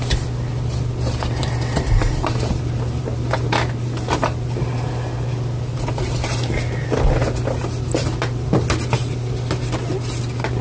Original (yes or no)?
yes